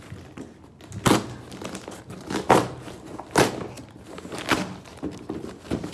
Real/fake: real